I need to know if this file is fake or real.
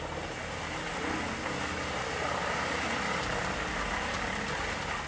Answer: real